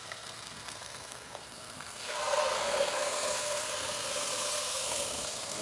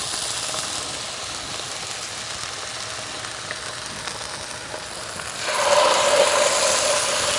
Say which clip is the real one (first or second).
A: second